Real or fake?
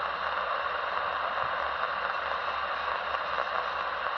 real